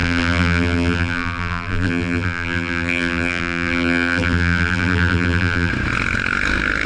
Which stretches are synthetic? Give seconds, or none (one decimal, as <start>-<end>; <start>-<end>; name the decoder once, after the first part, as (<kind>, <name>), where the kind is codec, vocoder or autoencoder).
0.0-5.7 (vocoder, BigVGAN v2)